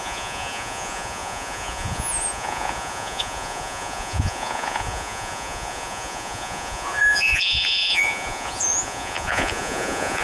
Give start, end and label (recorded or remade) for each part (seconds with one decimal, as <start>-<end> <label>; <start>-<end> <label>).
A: 0.0-10.2 remade